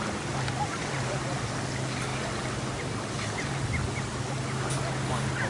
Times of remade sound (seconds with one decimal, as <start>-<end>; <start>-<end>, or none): none